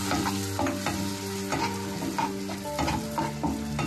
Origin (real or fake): real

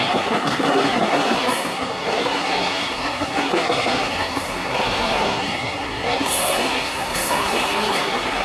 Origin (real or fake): fake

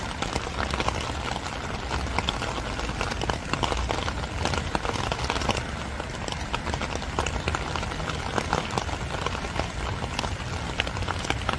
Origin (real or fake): real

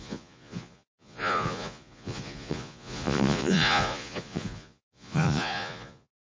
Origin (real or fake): fake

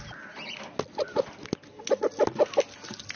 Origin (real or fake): real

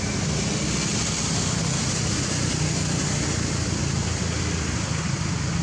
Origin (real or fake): real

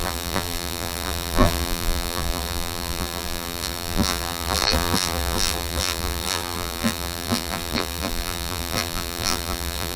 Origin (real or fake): fake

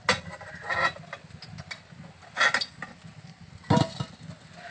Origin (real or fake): real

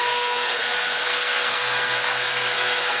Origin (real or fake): fake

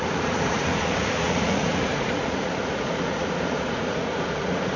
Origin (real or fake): fake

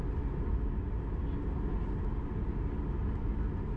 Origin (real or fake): real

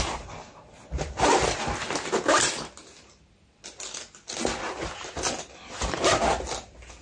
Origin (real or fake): real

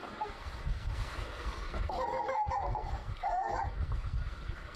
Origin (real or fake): fake